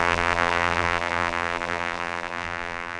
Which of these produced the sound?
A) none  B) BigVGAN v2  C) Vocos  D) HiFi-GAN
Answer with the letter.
B